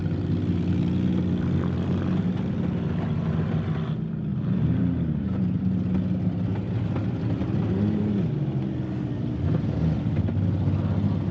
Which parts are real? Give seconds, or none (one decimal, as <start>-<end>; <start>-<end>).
0.0-4.3; 5.6-11.3